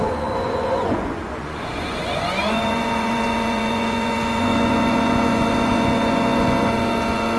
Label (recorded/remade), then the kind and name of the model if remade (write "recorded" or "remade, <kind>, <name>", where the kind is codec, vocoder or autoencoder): remade, vocoder, Vocos